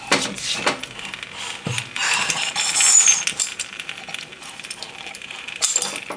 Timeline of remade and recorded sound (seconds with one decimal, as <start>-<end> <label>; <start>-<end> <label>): 0.0-2.0 recorded; 2.0-5.6 remade; 5.6-6.2 recorded